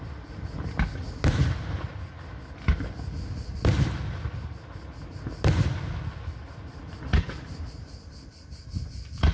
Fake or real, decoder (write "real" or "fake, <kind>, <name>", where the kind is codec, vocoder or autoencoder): real